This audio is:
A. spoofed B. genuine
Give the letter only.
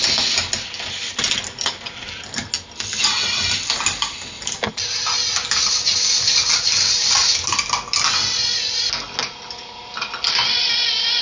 B